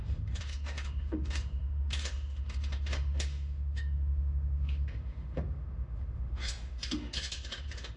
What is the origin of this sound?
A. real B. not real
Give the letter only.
B